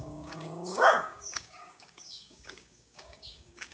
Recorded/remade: remade